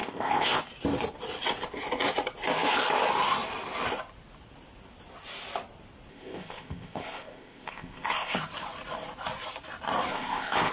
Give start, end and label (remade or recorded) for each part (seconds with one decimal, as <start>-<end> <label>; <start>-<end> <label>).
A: 0.0-0.6 remade; 0.6-6.1 recorded; 6.1-8.4 remade; 8.4-10.1 recorded; 10.1-10.7 remade